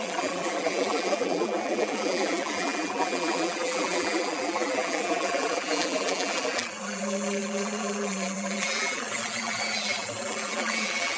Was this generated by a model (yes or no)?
yes